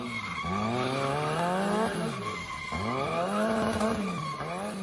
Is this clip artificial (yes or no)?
no